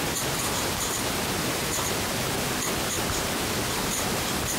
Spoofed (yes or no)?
no